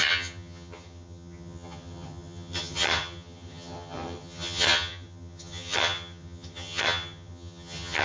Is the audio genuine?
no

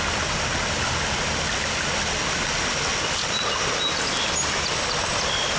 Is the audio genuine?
yes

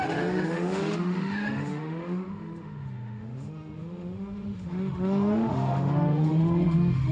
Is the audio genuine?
no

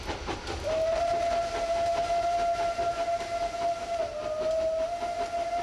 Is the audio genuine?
yes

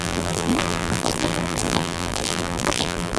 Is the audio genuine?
no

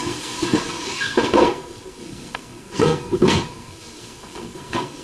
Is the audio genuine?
no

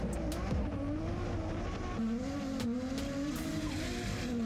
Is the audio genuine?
yes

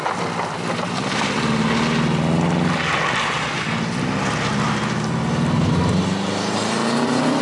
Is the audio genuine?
yes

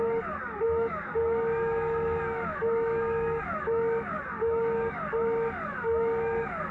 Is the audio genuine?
no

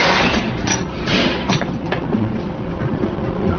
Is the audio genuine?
no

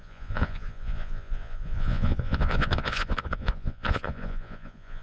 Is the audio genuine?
no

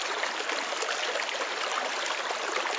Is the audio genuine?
yes